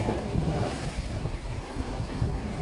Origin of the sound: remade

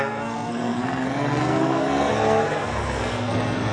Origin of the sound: remade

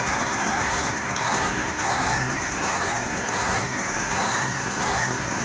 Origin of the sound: remade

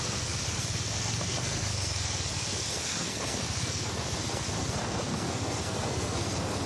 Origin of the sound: remade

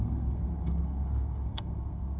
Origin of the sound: remade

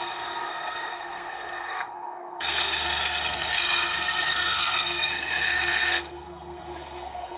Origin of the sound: remade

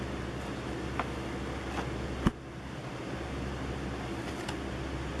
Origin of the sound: recorded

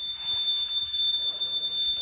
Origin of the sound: recorded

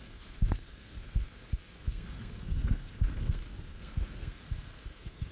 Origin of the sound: remade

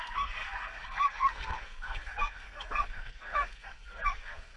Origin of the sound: remade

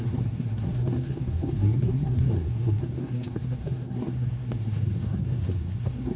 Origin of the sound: remade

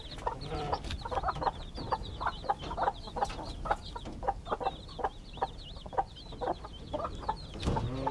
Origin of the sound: recorded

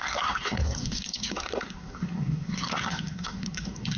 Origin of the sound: remade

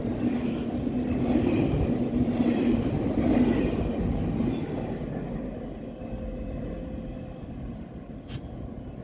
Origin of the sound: recorded